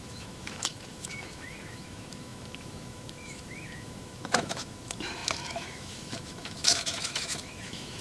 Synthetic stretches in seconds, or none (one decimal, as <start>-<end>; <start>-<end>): 0.0-8.0